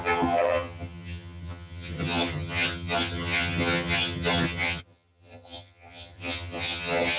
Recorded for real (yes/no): no